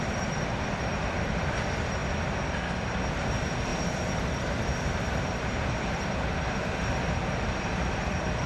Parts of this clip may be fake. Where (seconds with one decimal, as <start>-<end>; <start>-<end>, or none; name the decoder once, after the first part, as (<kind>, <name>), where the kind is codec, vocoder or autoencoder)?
0.0-2.0 (vocoder, BigVGAN v2); 3.1-8.5